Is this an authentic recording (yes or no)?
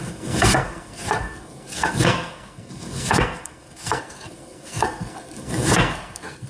no